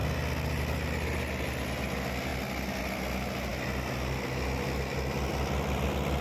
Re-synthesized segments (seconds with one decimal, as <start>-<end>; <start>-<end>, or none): none